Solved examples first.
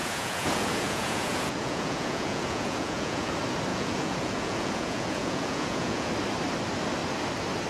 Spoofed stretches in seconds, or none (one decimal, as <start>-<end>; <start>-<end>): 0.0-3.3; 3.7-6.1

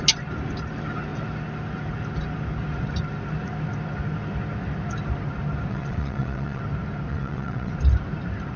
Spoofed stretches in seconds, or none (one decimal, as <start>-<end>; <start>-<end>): 5.7-6.6; 7.1-7.7

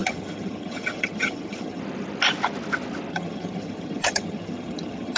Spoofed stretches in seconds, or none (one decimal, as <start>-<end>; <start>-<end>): 0.0-1.8; 3.1-5.2